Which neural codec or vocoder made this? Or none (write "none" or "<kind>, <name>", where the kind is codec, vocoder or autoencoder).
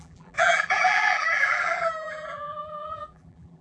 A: vocoder, BigVGAN v2